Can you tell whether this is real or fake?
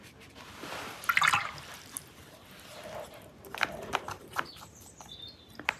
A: real